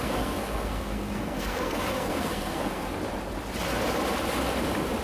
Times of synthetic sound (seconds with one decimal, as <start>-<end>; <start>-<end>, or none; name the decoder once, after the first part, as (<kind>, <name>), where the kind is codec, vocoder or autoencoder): 0.0-2.9 (codec, SNAC)